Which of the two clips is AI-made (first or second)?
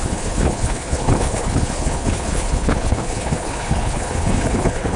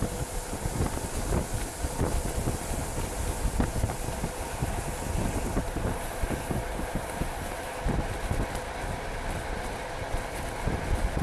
first